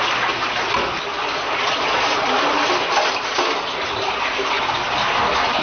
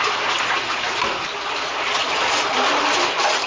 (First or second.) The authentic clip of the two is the first